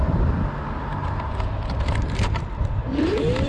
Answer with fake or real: fake